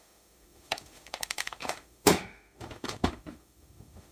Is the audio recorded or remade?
remade